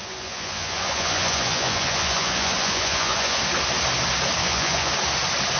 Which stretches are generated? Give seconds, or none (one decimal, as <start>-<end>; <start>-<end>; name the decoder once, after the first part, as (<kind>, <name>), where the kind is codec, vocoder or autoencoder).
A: 0.0-3.4 (vocoder, Vocos); 4.4-4.9